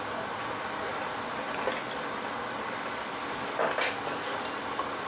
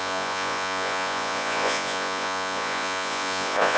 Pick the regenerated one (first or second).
second